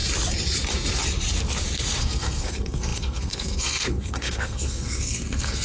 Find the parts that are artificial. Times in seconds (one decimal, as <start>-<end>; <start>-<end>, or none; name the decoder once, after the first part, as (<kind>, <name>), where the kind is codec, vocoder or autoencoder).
2.0-5.6 (codec, SNAC)

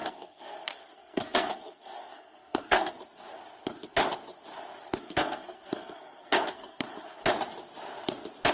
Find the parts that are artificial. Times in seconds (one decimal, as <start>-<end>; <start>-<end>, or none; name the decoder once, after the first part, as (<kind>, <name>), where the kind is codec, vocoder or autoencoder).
0.0-2.9 (codec, SNAC); 4.9-7.2

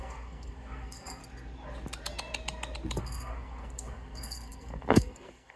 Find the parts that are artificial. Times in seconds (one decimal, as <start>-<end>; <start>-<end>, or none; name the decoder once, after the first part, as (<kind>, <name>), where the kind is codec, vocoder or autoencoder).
0.0-1.2 (codec, SNAC); 3.0-5.6

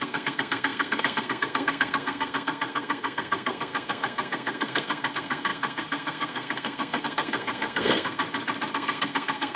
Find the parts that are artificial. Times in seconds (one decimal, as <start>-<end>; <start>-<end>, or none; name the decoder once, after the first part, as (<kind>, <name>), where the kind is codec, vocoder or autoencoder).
0.0-8.2 (codec, SNAC); 8.7-9.6

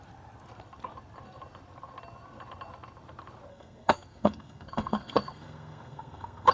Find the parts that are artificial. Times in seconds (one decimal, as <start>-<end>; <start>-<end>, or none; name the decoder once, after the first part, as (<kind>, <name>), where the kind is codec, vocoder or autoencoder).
3.5-6.5 (codec, SNAC)

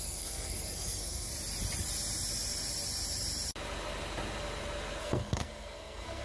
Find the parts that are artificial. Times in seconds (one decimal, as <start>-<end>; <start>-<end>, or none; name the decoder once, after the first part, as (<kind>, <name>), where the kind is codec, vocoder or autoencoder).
0.0-1.3 (codec, SNAC); 5.0-6.2

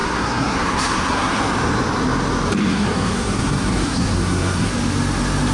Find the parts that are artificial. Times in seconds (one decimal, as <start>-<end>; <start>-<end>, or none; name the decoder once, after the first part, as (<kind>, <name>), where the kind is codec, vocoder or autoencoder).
0.0-1.4 (codec, SNAC); 2.7-4.7

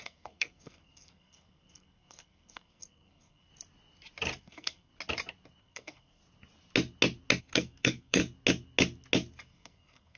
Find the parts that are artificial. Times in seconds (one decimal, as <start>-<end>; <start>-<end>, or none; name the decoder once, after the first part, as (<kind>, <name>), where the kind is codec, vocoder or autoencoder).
0.0-3.5 (codec, SNAC); 4.4-4.9; 5.6-6.2; 7.4-8.2; 9.5-10.2